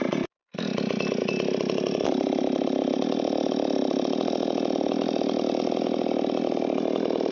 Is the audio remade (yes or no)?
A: no